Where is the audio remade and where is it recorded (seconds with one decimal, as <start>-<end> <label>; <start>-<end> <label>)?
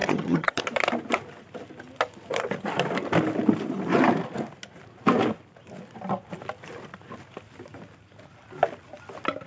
0.0-0.6 remade; 0.6-9.5 recorded